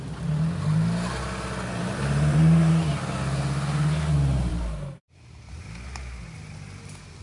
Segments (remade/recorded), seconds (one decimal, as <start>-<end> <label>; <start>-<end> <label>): 0.0-1.8 recorded; 1.8-2.7 remade; 2.7-4.5 recorded; 4.5-5.4 remade; 5.4-7.2 recorded